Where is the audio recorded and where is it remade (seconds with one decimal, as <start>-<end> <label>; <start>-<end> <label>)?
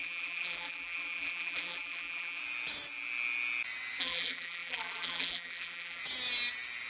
0.0-2.4 remade; 2.4-4.0 recorded; 4.0-6.0 remade; 6.0-6.9 recorded